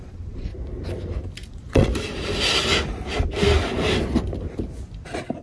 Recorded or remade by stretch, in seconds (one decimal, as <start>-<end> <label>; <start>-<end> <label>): 0.0-0.5 remade; 0.5-1.5 recorded; 1.5-1.9 remade; 1.9-5.4 recorded